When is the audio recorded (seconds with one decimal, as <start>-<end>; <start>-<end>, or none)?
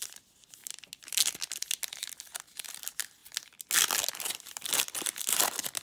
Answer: 0.0-5.8